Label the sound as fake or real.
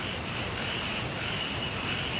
fake